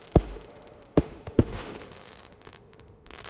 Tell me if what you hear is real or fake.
fake